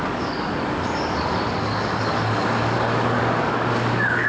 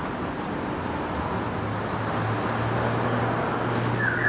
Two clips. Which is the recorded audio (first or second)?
second